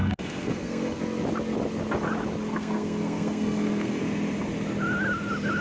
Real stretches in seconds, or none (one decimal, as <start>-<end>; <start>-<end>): 1.0-2.5; 4.0-5.6